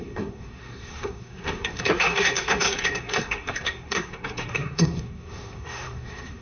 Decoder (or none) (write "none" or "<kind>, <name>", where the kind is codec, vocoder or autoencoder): codec, SNAC